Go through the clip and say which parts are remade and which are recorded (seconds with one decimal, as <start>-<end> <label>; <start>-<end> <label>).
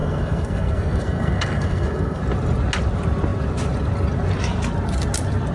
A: 0.0-2.2 remade; 2.2-5.5 recorded